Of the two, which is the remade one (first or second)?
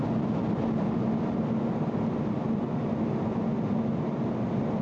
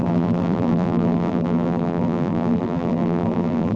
second